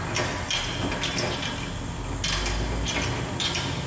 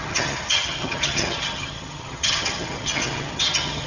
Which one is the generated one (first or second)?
second